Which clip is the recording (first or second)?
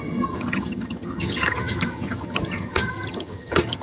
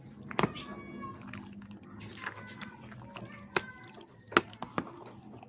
second